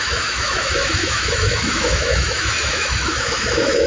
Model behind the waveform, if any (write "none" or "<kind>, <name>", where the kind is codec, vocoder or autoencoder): autoencoder, DAC-VAE